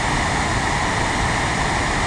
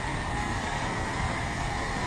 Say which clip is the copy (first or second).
second